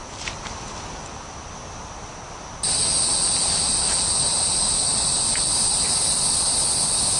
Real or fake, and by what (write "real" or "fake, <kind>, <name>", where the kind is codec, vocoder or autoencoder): real